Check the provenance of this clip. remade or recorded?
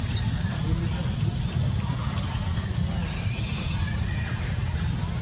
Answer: recorded